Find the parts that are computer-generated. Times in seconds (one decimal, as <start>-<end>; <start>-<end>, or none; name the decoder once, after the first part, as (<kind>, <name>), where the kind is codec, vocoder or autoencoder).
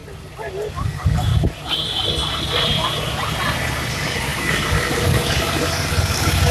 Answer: 0.7-1.3 (codec, DAC); 3.9-6.5